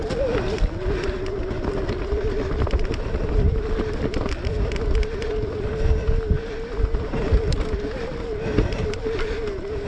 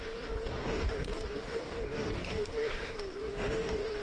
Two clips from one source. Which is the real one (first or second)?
first